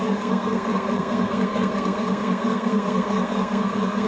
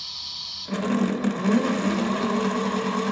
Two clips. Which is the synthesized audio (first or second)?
first